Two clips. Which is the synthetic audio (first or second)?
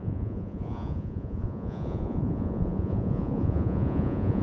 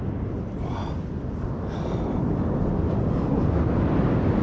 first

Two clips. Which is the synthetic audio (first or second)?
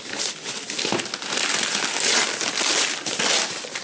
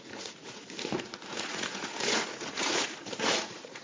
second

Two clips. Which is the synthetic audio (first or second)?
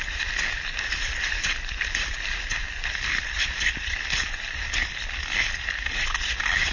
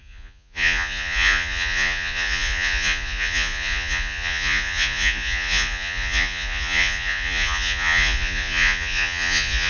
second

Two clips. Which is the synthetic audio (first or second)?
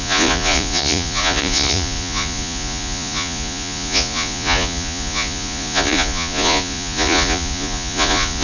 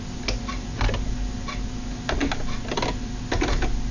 first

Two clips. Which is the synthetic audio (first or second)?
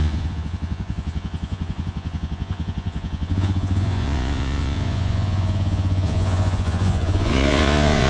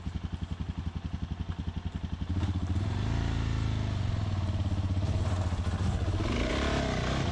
first